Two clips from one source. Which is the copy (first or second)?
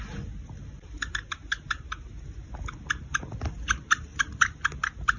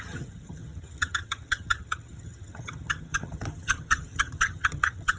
second